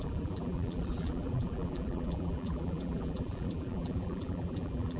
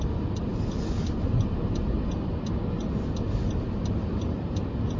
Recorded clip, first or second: second